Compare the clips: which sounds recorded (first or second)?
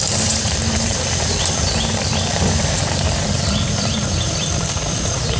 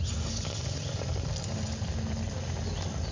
second